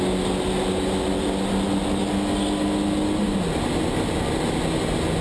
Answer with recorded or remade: recorded